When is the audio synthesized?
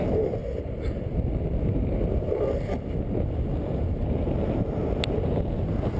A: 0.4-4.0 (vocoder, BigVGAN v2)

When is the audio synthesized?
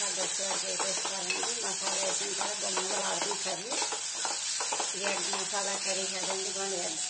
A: none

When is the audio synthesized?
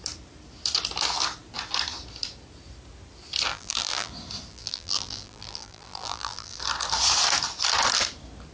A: 3.5-4.1 (vocoder, BigVGAN v2); 4.5-6.6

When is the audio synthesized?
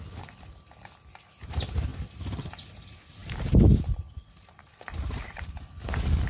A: 3.2-5.7 (vocoder, BigVGAN v2)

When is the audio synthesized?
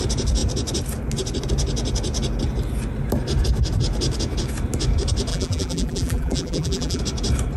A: 5.3-7.0 (vocoder, BigVGAN v2)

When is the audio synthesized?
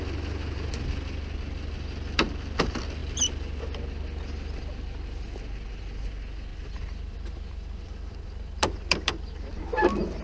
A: 3.0-3.6 (vocoder, BigVGAN v2); 6.5-9.5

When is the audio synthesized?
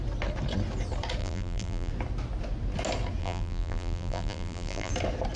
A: 1.2-1.9 (vocoder, BigVGAN v2); 3.2-4.9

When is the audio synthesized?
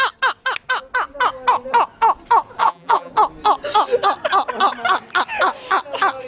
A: 2.6-3.1 (vocoder, BigVGAN v2)